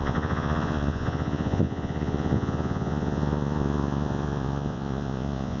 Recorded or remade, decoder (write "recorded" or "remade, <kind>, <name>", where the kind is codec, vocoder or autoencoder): remade, vocoder, Vocos